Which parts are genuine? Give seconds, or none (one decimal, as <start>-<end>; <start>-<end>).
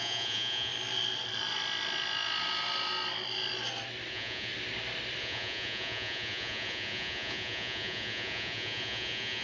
0.7-4.1; 4.5-5.2